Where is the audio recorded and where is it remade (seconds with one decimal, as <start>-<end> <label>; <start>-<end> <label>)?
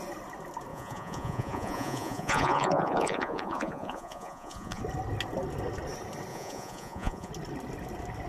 0.0-0.7 recorded; 0.7-4.8 remade; 4.8-6.3 recorded; 6.3-7.3 remade; 7.3-8.3 recorded